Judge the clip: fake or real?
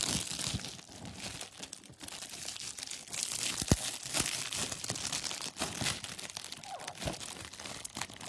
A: real